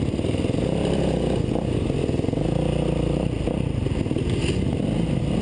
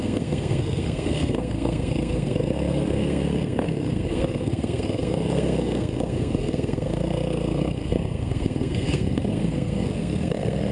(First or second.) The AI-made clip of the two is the second